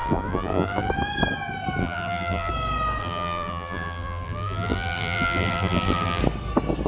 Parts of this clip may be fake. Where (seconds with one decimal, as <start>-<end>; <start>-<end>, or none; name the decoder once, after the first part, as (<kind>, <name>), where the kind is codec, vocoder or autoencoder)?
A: 0.0-0.9 (vocoder, BigVGAN v2); 1.8-2.5; 3.0-6.2